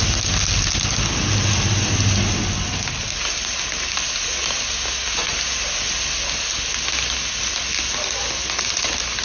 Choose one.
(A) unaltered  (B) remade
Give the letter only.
A